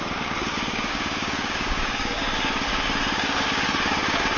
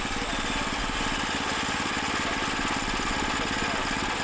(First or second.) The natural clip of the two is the second